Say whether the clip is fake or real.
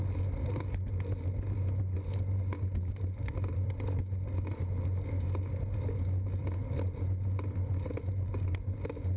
real